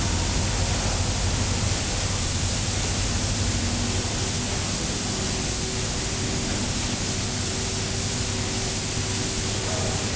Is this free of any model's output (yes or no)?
yes